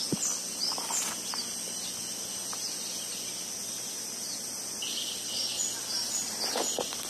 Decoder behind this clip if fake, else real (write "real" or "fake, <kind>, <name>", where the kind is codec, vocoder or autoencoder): real